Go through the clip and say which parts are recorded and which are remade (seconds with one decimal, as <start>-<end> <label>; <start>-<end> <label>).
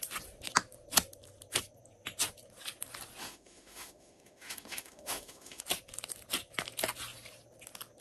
0.0-3.2 recorded; 3.2-5.6 remade; 5.6-8.0 recorded